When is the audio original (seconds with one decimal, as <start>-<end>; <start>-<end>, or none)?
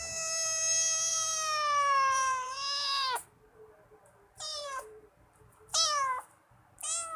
0.0-1.1; 2.5-4.5; 5.1-5.7; 6.5-7.2